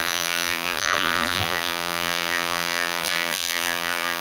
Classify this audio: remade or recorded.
remade